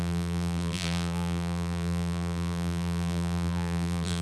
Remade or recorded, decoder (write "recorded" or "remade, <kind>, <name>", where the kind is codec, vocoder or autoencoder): remade, vocoder, BigVGAN v2